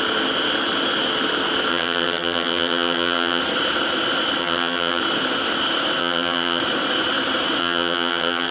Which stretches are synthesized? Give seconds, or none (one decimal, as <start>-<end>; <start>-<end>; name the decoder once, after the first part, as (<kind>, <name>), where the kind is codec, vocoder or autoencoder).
1.7-3.4 (vocoder, HiFi-GAN); 4.4-5.0; 6.0-6.6; 7.6-8.5